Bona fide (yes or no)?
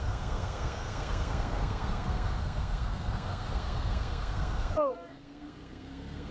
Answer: no